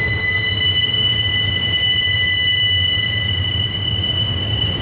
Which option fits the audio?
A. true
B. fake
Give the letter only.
A